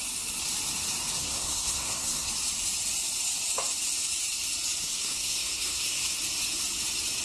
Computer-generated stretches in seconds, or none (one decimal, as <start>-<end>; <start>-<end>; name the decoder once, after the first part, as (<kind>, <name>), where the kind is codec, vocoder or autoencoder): 1.2-2.3 (codec, SNAC); 4.9-6.2